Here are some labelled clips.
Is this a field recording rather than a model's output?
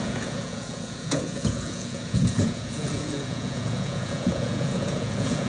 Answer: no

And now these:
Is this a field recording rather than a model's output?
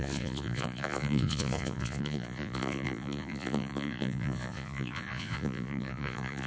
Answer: no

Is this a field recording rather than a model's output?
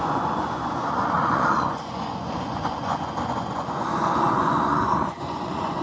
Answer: no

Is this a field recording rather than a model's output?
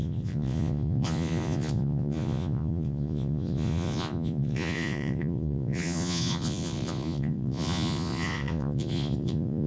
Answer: no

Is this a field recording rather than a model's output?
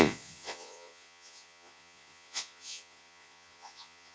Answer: no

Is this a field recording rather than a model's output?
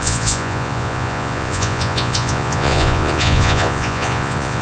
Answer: no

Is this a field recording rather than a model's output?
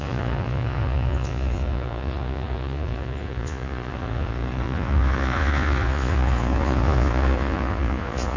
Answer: no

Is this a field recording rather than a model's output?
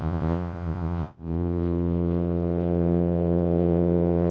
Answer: no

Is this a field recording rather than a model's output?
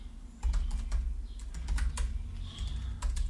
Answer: yes